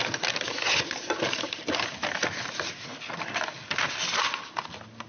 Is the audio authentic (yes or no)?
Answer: yes